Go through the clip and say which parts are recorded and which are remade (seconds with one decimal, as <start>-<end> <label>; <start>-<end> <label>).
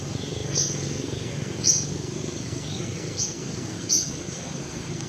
0.0-5.1 remade